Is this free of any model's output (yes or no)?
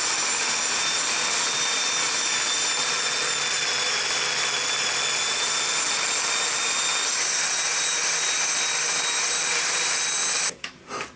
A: yes